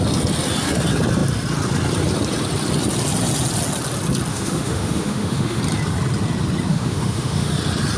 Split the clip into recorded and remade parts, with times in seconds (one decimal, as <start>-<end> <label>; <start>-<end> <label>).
0.0-4.3 recorded; 4.3-5.6 remade; 5.6-6.7 recorded; 6.7-7.5 remade; 7.5-8.0 recorded